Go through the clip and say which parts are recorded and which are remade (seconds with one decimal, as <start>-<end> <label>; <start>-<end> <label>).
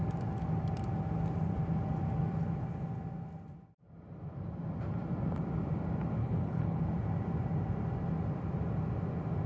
0.0-6.2 recorded; 6.2-6.8 remade; 6.8-9.5 recorded